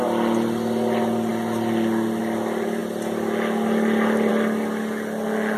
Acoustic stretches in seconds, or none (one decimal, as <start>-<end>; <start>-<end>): 0.0-5.6